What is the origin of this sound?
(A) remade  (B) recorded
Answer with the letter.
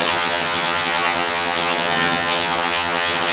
A